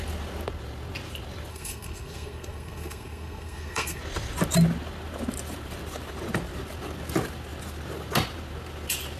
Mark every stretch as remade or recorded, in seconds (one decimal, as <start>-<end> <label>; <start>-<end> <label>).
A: 0.0-1.5 recorded; 1.5-4.0 remade; 4.0-9.2 recorded